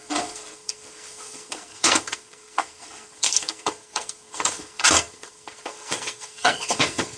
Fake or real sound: fake